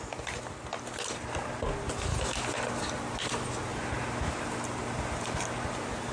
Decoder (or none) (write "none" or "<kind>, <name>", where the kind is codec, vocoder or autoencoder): none